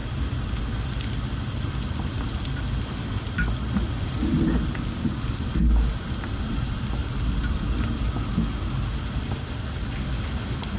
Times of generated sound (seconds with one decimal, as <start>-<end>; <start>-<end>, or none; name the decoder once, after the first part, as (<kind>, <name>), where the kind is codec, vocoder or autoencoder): 0.0-0.6 (vocoder, BigVGAN v2)